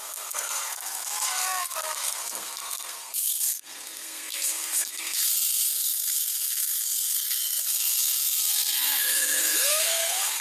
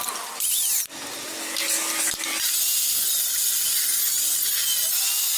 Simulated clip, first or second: first